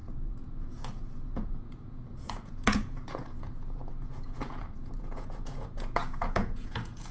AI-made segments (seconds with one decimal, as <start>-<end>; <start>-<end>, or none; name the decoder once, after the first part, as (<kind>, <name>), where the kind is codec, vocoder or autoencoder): 0.0-7.1 (vocoder, Vocos)